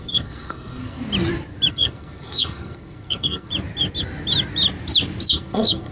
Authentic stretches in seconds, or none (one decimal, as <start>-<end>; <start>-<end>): 1.0-1.7; 3.5-5.3